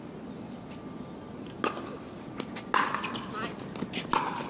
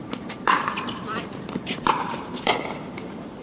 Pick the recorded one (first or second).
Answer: first